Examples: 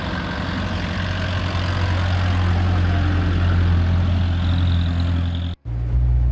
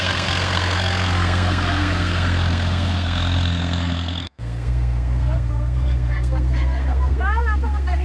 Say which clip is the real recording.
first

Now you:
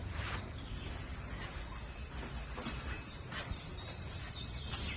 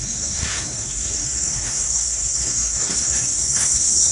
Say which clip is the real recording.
first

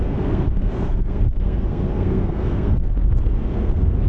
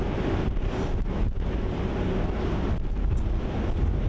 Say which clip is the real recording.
second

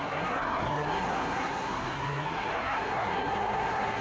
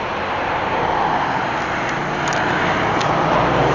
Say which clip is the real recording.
second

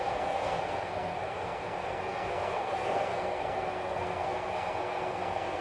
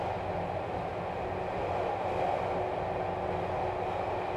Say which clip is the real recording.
second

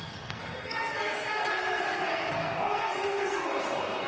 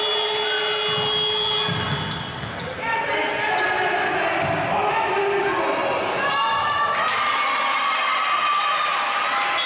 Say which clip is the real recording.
second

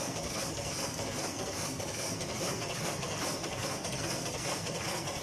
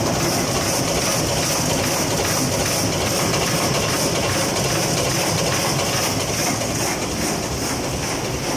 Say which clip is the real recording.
second